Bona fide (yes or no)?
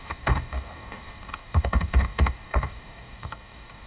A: no